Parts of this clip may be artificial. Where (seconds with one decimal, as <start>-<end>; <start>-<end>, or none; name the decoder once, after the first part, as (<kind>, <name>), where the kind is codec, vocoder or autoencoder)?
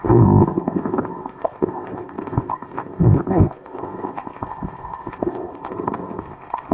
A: 0.0-6.7 (codec, ZipCodec)